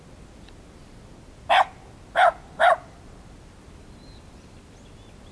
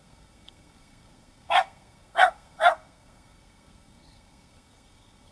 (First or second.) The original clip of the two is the first